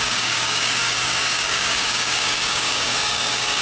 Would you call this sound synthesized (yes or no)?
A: yes